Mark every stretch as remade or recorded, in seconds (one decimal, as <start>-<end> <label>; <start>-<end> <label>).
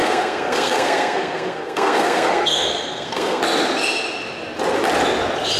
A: 0.0-3.4 remade; 3.4-5.6 recorded